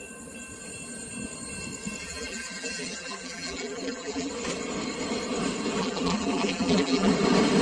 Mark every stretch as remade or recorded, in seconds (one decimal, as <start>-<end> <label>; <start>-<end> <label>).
0.0-2.0 recorded; 2.0-4.3 remade; 4.3-5.8 recorded; 5.8-7.1 remade; 7.1-7.6 recorded